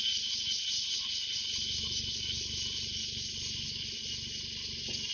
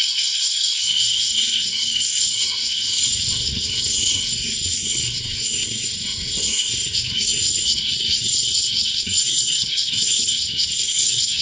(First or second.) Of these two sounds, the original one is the first